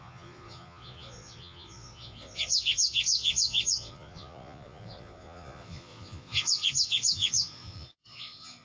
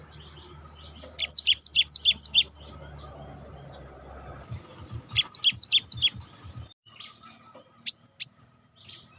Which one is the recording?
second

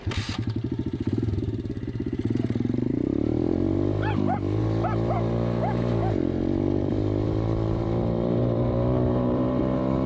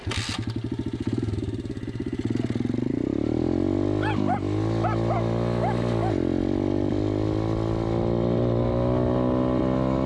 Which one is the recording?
second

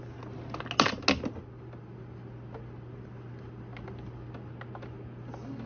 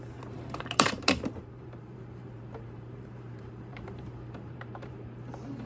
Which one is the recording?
first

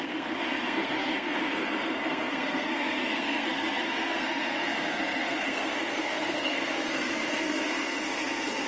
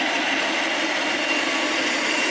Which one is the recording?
second